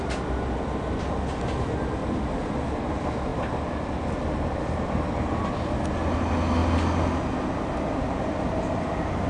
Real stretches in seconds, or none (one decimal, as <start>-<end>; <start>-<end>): 0.0-9.3